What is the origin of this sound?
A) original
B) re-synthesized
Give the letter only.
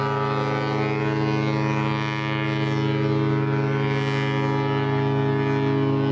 A